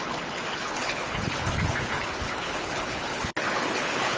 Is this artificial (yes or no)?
yes